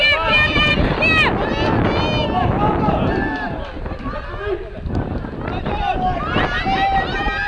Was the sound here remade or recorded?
recorded